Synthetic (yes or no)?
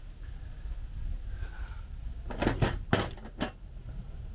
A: no